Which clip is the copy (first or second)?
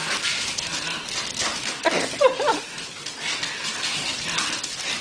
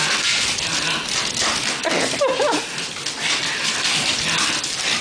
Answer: first